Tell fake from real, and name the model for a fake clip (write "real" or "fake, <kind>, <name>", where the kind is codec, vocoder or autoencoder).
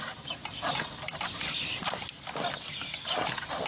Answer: real